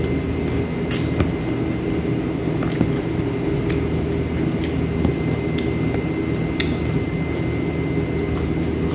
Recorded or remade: recorded